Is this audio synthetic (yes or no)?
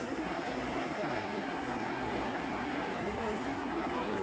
yes